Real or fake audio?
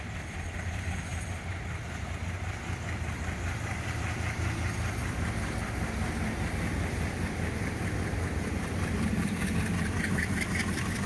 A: fake